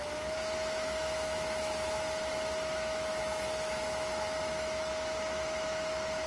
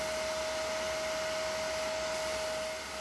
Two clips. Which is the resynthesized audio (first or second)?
first